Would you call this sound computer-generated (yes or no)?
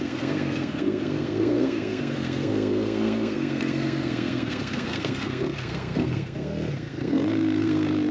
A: yes